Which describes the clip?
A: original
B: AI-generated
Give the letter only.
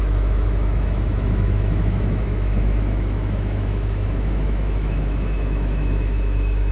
B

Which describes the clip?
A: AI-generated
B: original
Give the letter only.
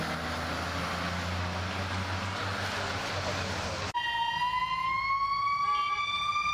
B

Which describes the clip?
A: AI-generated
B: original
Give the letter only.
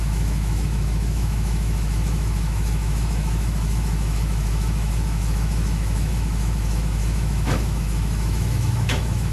A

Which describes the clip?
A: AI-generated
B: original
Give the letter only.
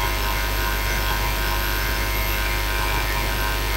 B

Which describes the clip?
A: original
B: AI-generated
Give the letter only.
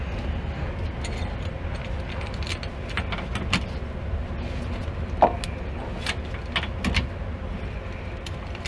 A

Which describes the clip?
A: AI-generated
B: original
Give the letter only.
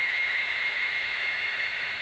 A